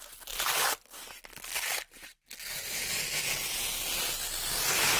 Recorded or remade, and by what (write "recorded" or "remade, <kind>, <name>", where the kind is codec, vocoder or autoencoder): recorded